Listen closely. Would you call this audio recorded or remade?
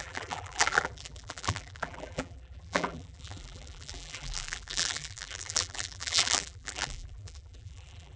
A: remade